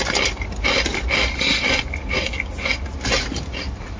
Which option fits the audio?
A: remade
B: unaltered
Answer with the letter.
B